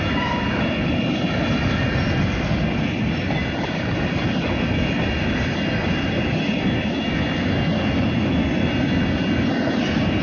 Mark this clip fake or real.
real